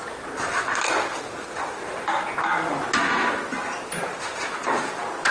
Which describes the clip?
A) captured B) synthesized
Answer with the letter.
A